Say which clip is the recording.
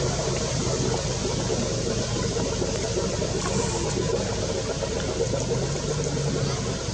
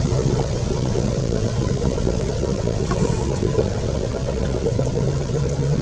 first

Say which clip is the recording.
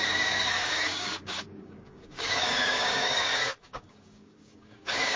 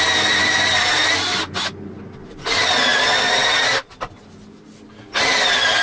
second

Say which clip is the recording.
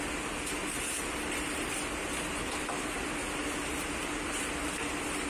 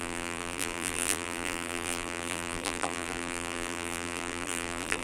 first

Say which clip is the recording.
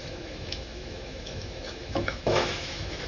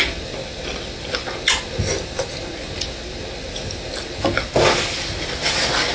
second